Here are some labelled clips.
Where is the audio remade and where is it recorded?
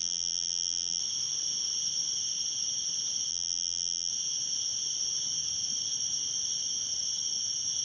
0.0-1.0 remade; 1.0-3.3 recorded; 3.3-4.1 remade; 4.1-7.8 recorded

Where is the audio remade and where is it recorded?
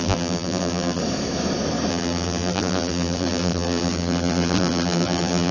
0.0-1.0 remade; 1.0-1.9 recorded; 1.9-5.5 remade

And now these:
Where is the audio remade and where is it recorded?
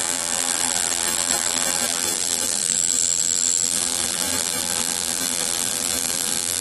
0.0-6.6 remade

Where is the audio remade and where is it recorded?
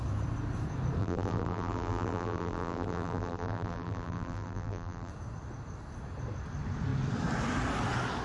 0.0-1.0 recorded; 1.0-5.1 remade; 5.1-8.2 recorded